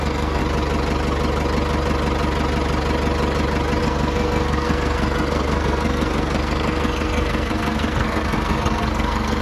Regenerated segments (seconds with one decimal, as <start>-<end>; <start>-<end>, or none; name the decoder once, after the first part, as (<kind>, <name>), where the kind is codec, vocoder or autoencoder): 0.0-0.4 (codec, SNAC); 3.8-9.4